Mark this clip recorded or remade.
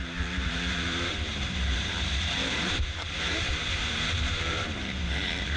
remade